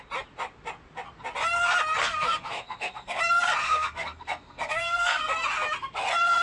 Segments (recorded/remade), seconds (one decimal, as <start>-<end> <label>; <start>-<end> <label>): 0.0-2.0 recorded; 2.0-3.2 remade; 3.2-3.6 recorded; 3.6-5.2 remade; 5.2-6.4 recorded